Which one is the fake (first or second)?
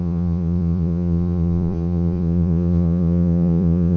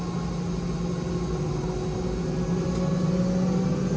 first